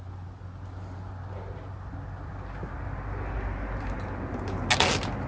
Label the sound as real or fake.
real